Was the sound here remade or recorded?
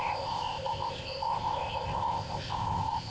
remade